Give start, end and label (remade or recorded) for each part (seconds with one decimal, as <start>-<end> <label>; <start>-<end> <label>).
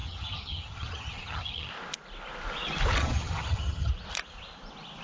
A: 0.0-1.7 remade; 1.7-3.0 recorded; 3.0-3.9 remade; 3.9-5.0 recorded